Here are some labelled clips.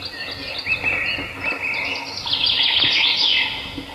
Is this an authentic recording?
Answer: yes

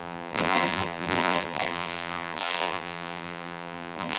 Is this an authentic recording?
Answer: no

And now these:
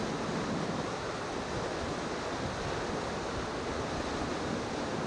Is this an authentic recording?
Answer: yes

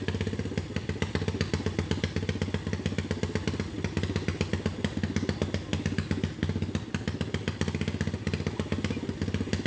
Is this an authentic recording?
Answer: yes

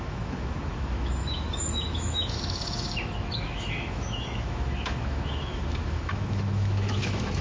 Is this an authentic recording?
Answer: no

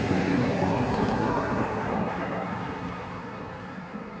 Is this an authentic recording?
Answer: no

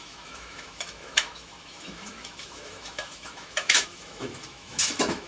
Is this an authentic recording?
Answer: no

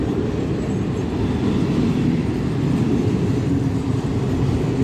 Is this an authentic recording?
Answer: yes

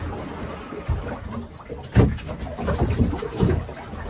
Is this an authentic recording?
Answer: yes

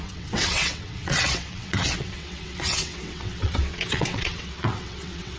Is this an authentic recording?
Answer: no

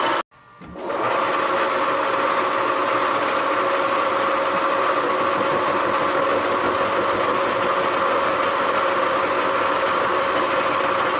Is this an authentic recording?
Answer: yes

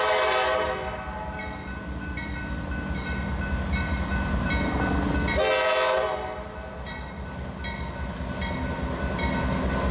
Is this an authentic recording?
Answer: yes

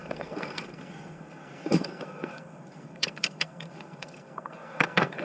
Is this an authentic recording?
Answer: no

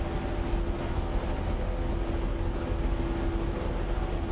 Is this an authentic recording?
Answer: yes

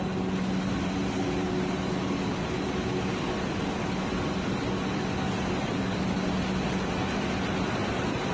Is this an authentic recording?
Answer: yes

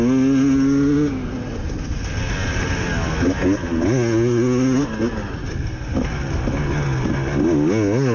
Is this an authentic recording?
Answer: yes